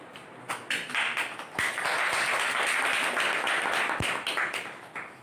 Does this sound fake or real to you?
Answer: real